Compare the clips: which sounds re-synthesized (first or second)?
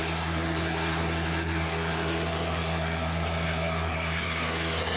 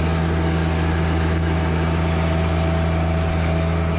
first